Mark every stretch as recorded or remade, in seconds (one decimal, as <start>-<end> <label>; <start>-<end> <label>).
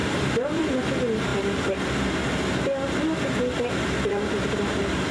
0.0-0.6 remade; 0.6-5.1 recorded